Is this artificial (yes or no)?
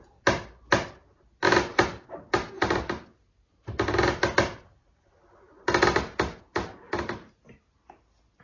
no